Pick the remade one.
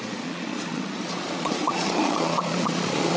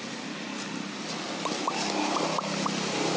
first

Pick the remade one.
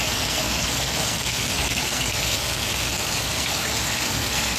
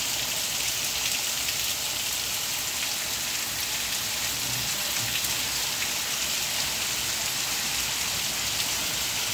first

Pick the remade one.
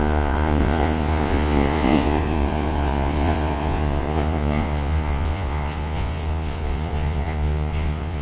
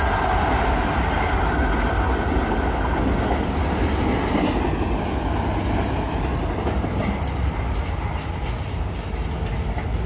first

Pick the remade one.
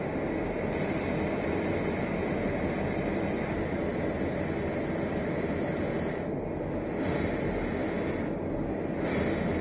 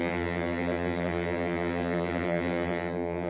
second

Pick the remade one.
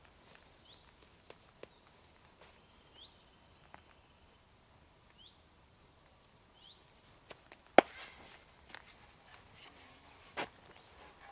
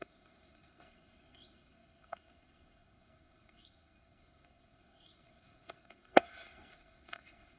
second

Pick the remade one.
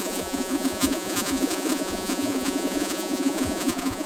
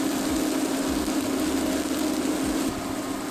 first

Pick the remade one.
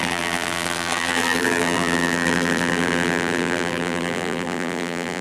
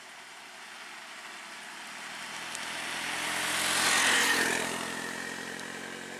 first